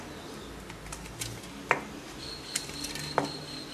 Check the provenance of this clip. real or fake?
real